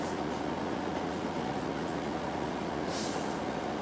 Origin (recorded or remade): remade